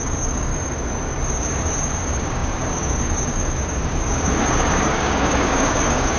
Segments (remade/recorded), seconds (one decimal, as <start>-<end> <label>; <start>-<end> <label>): 0.0-0.5 remade; 0.5-1.3 recorded; 1.3-6.2 remade